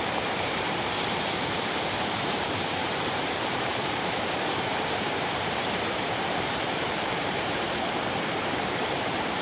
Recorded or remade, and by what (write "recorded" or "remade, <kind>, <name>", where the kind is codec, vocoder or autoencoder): remade, vocoder, BigVGAN v2